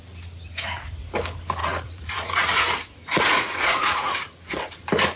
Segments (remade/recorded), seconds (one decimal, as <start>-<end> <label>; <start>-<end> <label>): 0.0-1.6 recorded; 1.6-4.1 remade; 4.1-5.2 recorded